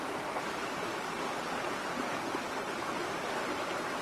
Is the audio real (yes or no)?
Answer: yes